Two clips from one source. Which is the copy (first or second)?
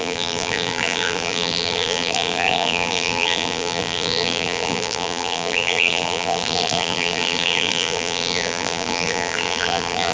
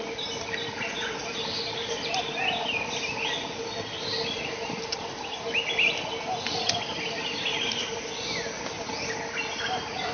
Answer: first